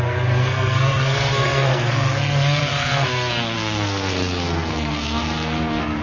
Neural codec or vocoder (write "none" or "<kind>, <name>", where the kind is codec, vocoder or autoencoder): codec, SNAC